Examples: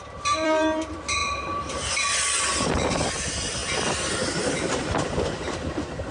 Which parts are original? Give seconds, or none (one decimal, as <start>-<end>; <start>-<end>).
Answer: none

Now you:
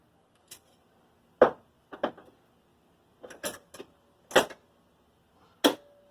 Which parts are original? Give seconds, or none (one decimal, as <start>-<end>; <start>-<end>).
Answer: 0.0-6.1

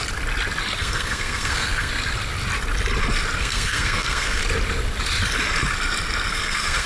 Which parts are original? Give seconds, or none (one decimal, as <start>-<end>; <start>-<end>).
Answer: 0.0-0.8; 1.9-3.4; 4.4-6.3

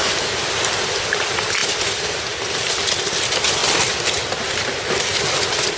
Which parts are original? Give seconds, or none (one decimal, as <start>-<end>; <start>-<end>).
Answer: 0.0-5.8

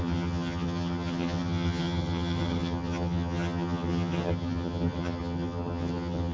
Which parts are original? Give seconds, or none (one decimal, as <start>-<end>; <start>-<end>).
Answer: none